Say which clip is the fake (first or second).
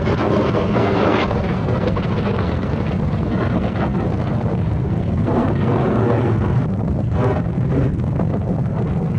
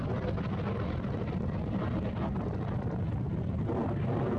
first